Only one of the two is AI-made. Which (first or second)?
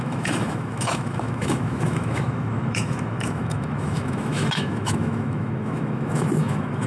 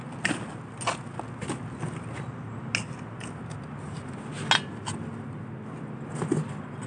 first